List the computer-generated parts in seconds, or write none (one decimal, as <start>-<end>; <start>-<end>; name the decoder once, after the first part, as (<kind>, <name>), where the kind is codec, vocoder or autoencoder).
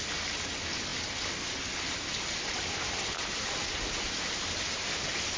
none